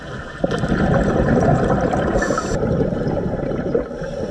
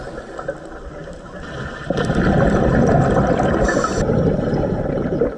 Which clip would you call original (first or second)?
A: second